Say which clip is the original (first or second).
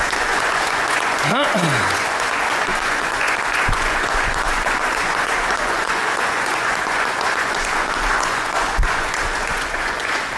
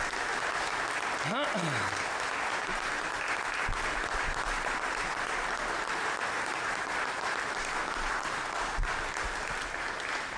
second